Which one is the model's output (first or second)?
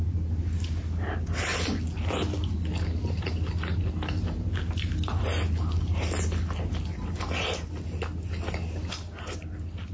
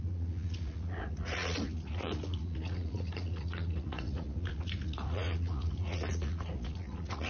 second